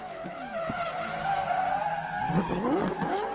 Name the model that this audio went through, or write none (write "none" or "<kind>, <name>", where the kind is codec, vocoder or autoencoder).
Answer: none